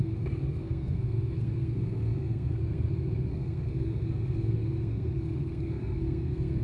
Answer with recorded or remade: remade